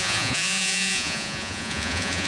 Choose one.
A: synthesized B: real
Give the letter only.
A